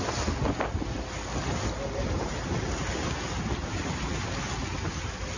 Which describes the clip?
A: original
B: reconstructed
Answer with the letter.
A